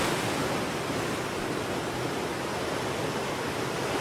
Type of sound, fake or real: real